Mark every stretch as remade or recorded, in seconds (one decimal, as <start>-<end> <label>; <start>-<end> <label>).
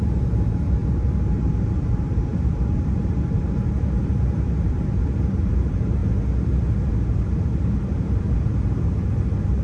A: 0.0-6.0 remade; 6.0-6.9 recorded; 6.9-9.6 remade